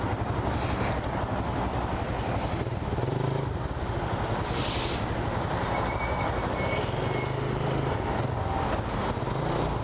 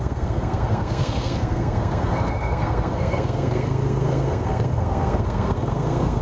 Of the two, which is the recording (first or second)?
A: first